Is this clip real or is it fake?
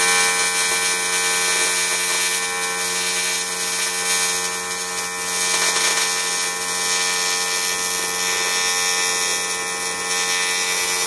real